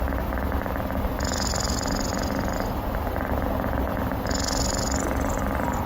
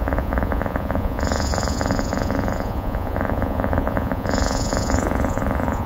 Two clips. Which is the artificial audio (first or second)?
second